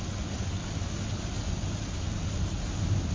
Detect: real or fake real